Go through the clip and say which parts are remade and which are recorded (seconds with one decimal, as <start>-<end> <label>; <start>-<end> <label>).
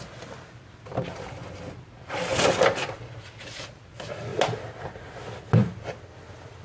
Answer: 0.0-6.6 recorded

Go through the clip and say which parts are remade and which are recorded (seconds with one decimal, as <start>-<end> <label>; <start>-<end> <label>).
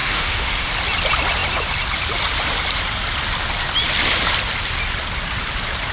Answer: 0.0-0.7 remade; 0.7-5.9 recorded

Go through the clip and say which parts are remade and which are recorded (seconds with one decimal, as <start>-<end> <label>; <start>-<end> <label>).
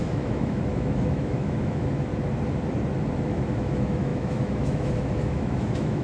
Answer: 0.0-2.1 remade; 2.1-3.2 recorded; 3.2-6.0 remade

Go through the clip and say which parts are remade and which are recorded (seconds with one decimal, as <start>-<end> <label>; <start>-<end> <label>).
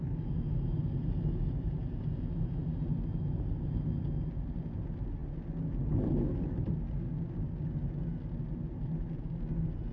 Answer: 0.0-9.9 recorded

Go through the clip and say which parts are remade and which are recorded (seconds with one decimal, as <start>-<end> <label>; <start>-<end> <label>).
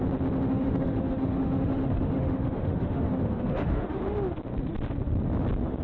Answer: 0.0-0.5 recorded; 0.5-4.0 remade; 4.0-5.8 recorded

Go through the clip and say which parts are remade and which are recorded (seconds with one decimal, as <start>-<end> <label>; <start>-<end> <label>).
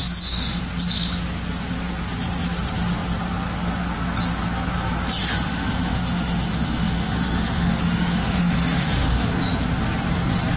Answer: 0.0-0.6 remade; 0.6-5.2 recorded; 5.2-9.3 remade; 9.3-10.6 recorded